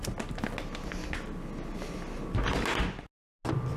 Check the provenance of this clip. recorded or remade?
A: recorded